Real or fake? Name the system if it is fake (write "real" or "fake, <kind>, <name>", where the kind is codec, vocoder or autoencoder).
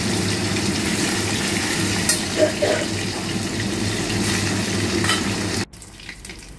real